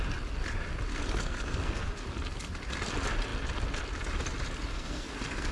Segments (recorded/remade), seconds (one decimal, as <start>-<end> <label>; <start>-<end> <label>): 0.0-0.9 recorded; 0.9-1.9 remade; 1.9-4.7 recorded; 4.7-5.5 remade